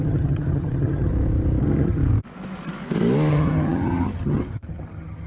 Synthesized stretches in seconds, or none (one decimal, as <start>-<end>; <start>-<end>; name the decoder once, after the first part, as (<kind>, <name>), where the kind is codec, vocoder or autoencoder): 0.0-1.1 (vocoder, HiFi-GAN); 1.6-2.0; 3.3-5.3